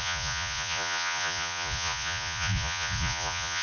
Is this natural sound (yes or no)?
no